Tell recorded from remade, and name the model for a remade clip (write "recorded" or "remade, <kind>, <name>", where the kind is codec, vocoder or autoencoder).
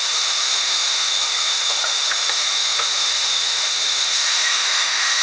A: remade, autoencoder, DAC-VAE